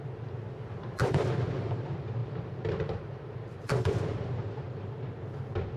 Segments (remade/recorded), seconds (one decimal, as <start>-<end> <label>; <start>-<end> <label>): 0.0-2.2 recorded; 2.2-4.2 remade; 4.2-5.8 recorded